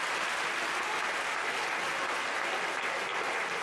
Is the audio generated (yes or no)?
no